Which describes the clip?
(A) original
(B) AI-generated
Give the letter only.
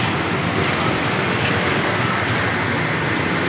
B